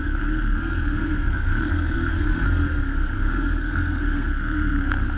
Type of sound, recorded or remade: remade